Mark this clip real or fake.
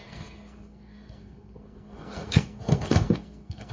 fake